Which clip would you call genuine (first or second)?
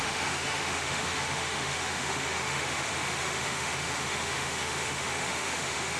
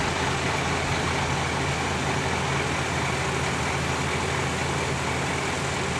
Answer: second